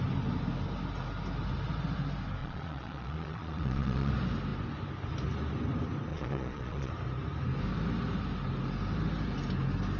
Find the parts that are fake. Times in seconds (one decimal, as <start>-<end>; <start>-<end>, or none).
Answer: 2.4-4.1; 6.1-6.9